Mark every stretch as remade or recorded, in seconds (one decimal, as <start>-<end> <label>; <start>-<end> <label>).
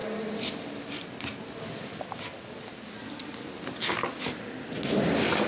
0.0-5.5 recorded